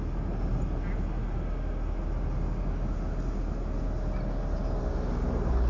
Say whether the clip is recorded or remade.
recorded